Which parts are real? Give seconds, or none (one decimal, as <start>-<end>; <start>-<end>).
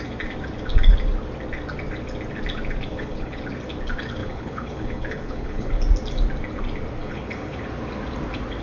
0.0-2.9; 3.4-4.2; 5.7-7.0; 7.6-8.6